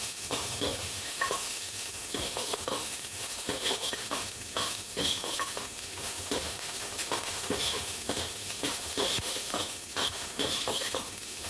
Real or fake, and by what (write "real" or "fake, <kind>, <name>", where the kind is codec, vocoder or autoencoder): fake, autoencoder, DAC-VAE